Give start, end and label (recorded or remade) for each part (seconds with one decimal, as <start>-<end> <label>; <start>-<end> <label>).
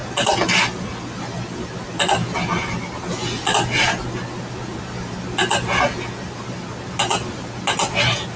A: 0.0-8.4 recorded